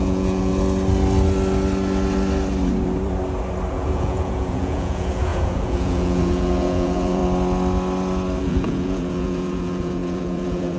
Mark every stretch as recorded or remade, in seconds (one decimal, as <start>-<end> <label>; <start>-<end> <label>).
0.0-0.5 remade; 0.5-3.7 recorded; 3.7-7.2 remade; 7.2-8.4 recorded; 8.4-10.8 remade